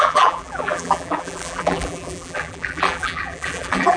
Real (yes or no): no